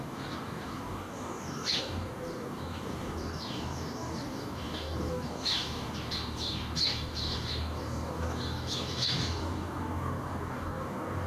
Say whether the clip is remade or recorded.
remade